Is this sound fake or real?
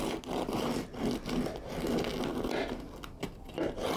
real